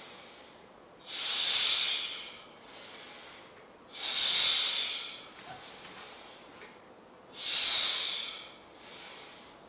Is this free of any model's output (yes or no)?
yes